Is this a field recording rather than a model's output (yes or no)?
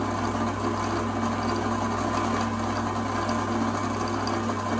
yes